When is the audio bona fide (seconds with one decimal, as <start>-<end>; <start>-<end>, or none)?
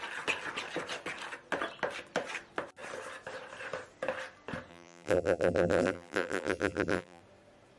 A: 0.0-4.7; 7.2-7.8